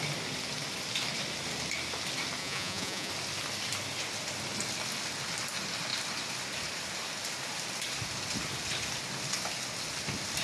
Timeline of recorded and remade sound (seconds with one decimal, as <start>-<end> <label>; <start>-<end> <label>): 0.0-2.4 recorded; 2.4-3.1 remade; 3.1-10.4 recorded